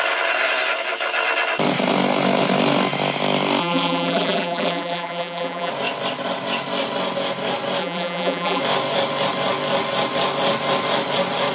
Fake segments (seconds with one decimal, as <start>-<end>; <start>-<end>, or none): 3.6-5.7; 7.8-8.6